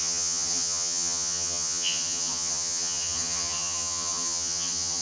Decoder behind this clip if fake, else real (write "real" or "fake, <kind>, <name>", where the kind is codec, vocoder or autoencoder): fake, vocoder, HiFi-GAN